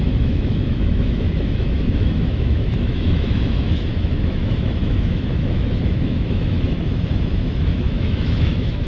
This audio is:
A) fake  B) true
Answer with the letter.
A